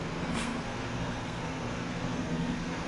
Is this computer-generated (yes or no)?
yes